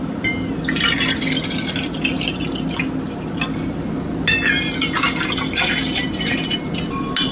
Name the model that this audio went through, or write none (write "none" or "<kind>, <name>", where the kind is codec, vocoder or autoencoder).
none